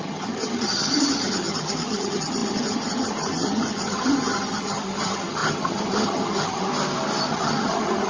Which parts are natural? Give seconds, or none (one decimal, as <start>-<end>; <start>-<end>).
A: 6.7-7.3